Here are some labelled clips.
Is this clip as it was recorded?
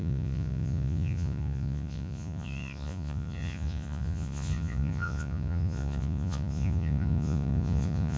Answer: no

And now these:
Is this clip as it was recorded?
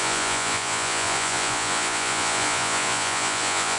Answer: no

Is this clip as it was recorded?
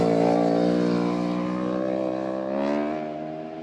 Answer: yes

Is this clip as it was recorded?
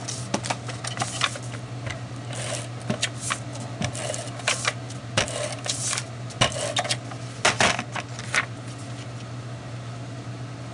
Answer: yes